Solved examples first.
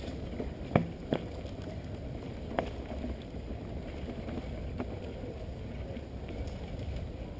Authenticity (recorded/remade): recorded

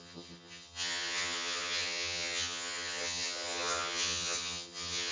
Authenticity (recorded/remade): remade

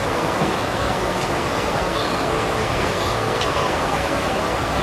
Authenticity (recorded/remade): remade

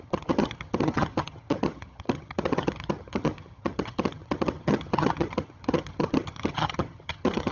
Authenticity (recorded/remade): remade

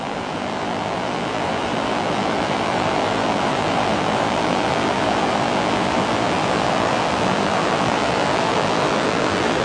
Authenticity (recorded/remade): remade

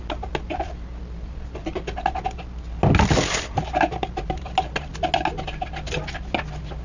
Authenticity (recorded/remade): recorded